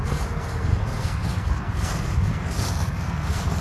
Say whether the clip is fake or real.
fake